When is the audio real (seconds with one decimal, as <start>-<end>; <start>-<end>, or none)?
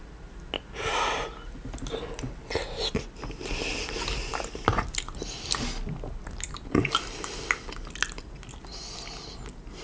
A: 0.0-9.8